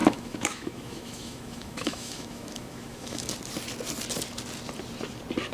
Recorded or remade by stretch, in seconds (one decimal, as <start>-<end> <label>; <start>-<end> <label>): 0.0-3.3 remade; 3.3-5.5 recorded